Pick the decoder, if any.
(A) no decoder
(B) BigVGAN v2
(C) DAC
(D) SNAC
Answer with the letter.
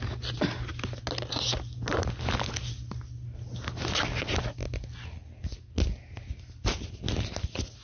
A